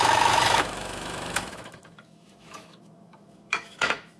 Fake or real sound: fake